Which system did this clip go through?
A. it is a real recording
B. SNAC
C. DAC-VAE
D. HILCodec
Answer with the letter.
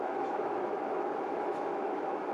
C